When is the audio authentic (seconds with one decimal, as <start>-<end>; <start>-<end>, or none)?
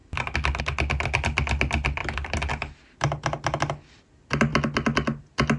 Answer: 0.0-5.6